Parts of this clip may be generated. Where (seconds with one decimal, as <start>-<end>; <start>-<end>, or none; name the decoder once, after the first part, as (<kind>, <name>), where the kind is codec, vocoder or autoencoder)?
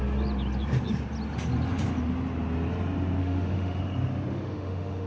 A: 3.2-3.8 (autoencoder, DAC-VAE); 4.3-5.1